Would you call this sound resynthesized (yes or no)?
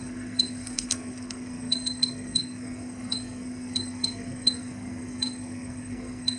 yes